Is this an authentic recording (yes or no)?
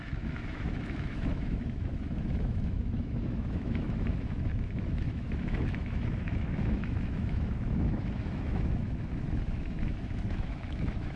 no